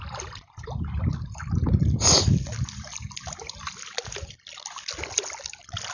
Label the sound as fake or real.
real